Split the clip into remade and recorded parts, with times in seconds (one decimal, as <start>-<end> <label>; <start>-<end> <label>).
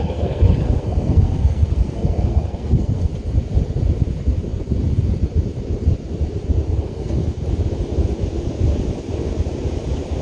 0.0-3.1 remade; 3.1-6.8 recorded; 6.8-7.2 remade; 7.2-10.2 recorded